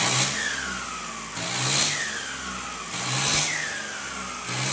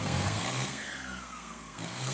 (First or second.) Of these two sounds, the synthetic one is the second